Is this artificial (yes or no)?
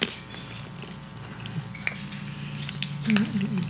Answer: no